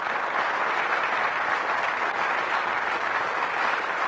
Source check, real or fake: real